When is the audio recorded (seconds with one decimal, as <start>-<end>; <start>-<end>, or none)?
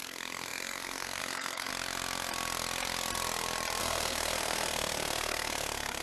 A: 1.7-3.8